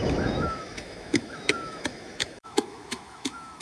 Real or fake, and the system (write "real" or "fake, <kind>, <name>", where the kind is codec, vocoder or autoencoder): fake, autoencoder, DAC-VAE